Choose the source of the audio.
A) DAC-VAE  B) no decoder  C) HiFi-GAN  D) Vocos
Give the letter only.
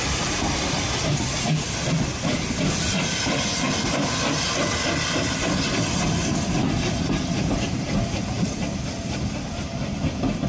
B